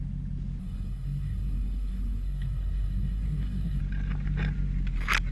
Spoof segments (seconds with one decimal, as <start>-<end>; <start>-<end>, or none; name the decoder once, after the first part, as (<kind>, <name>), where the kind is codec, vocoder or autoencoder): 0.6-3.8 (codec, SNAC)